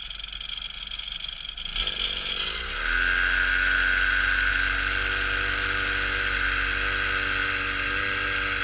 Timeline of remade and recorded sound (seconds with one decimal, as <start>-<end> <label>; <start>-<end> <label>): 0.0-8.6 recorded